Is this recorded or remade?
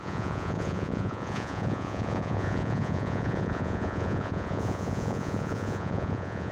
remade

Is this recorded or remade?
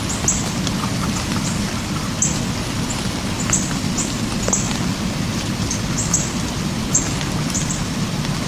recorded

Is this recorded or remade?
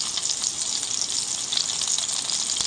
recorded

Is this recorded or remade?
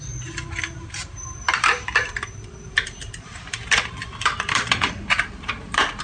remade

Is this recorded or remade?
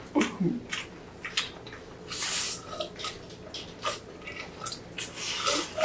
recorded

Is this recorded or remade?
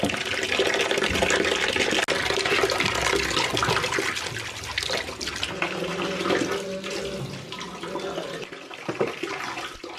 recorded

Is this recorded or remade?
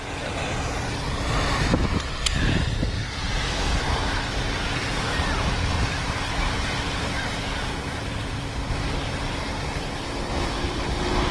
recorded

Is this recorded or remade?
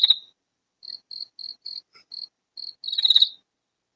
recorded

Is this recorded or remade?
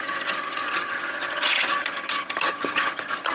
remade